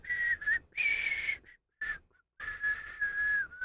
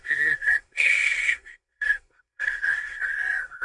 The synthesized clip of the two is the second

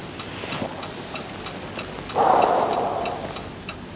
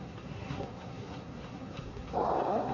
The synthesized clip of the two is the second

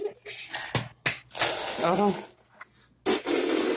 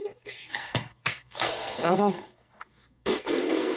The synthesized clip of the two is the second